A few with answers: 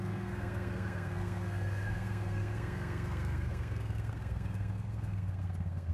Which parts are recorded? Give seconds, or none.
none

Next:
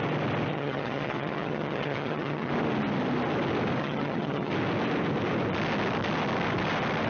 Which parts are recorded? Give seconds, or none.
0.0-0.5; 2.5-3.8; 4.5-7.1

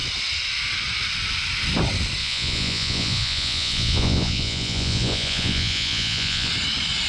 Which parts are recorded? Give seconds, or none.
0.0-2.2; 6.5-7.1

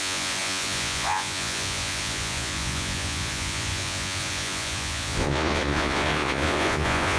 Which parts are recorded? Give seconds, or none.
none

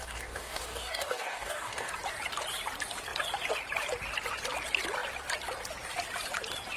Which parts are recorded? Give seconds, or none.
1.9-6.8